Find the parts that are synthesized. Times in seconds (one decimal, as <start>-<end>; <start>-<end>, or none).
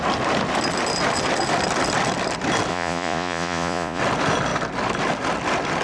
2.7-4.0